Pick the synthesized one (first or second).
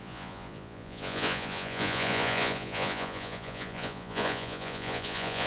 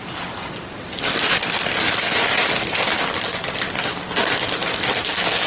first